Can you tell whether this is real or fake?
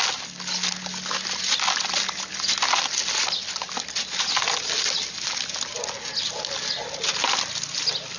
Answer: real